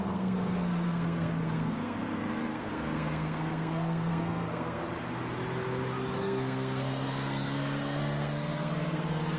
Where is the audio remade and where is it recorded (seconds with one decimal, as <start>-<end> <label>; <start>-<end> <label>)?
0.0-4.8 remade; 4.8-6.2 recorded; 6.2-9.4 remade